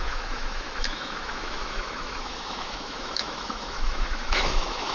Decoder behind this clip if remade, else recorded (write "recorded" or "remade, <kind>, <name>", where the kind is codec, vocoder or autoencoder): remade, autoencoder, DAC-VAE